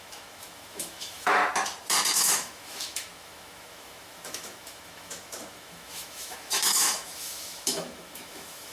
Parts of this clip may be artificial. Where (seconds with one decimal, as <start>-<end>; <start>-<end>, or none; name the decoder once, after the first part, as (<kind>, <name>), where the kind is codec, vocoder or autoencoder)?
0.0-1.4 (autoencoder, DAC-VAE); 2.1-8.7